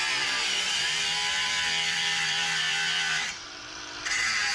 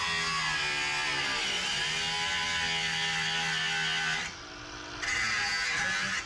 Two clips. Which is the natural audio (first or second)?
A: second